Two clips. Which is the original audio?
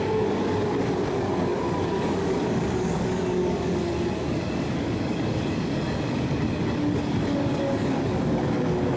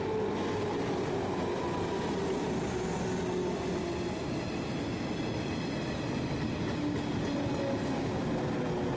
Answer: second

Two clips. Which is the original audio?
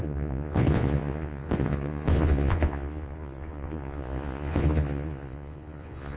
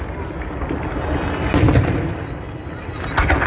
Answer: second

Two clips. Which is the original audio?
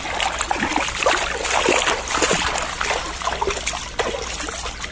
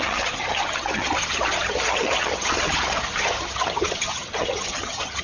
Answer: first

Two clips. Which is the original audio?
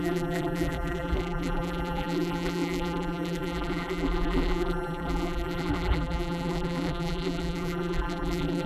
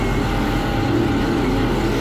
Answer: second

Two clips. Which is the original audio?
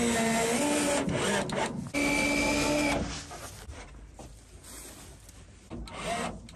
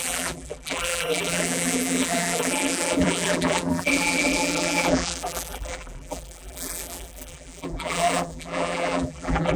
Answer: first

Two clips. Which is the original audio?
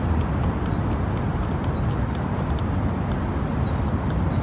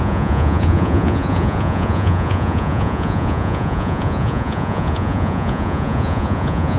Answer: first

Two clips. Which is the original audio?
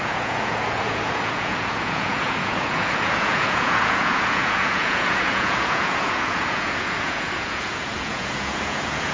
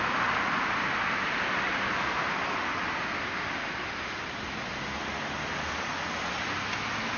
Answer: second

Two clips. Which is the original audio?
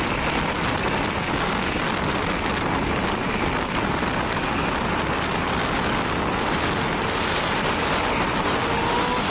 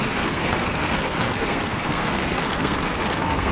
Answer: first